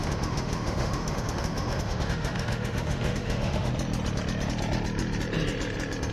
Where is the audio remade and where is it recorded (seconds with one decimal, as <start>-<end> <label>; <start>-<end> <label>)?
0.0-3.7 remade; 3.7-6.1 recorded